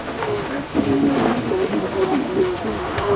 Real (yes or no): no